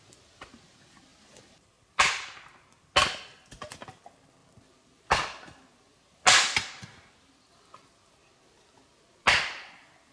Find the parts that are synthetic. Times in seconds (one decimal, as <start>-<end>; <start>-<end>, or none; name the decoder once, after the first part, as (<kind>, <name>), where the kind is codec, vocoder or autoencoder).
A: 1.1-2.9 (vocoder, BigVGAN v2); 4.4-7.3